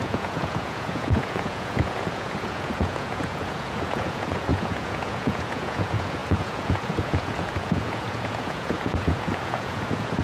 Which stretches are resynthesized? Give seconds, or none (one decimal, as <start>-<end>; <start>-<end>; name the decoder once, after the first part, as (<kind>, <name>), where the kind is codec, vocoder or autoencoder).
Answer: 0.0-10.2 (vocoder, Vocos)